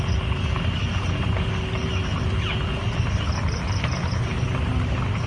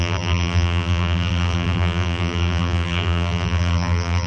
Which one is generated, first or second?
second